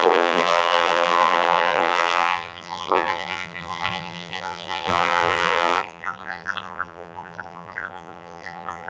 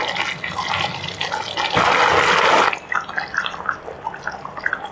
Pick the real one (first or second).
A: second